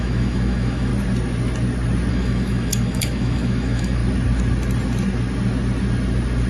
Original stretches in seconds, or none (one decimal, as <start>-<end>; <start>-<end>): 0.9-2.1; 4.0-6.5